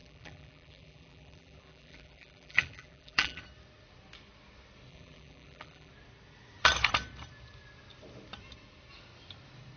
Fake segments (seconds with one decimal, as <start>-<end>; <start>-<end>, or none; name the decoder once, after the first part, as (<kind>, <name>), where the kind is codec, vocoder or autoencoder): 0.0-3.4 (vocoder, BigVGAN v2); 4.9-5.9